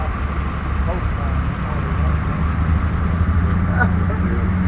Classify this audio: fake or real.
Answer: real